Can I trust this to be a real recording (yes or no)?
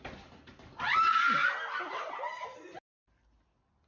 yes